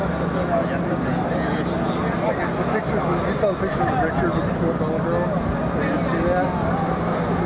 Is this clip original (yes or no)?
yes